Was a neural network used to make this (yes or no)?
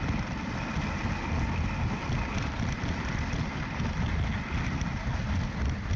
no